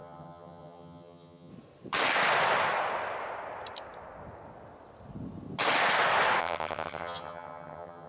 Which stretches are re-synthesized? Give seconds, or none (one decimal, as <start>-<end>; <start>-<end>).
0.0-1.5; 6.4-8.1